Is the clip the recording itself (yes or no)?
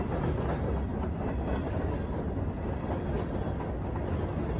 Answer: yes